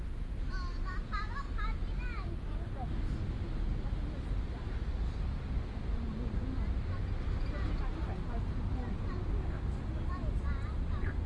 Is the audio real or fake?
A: real